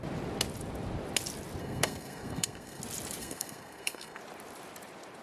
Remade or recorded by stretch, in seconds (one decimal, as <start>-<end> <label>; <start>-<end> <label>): 0.0-1.6 recorded; 1.6-2.8 remade; 2.8-3.2 recorded; 3.2-4.2 remade; 4.2-5.2 recorded